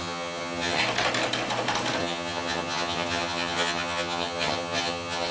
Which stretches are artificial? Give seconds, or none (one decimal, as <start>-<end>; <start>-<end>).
0.0-0.8; 2.0-5.3